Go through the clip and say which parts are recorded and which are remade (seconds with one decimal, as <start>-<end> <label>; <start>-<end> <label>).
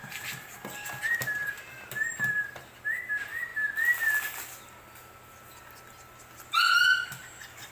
0.0-7.7 recorded